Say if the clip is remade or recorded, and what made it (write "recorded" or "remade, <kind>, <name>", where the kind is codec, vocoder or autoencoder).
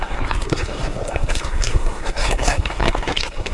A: remade, codec, SNAC